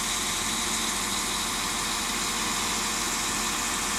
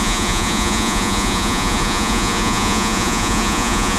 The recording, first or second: first